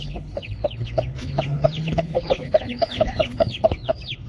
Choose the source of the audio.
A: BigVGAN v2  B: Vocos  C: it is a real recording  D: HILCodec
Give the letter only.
D